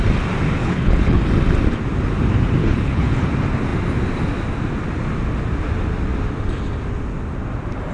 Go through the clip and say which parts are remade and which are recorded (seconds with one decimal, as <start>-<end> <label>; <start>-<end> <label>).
0.0-0.6 recorded; 0.6-1.2 remade; 1.2-2.6 recorded; 2.6-3.3 remade; 3.3-7.9 recorded